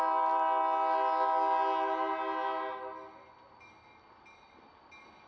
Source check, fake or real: real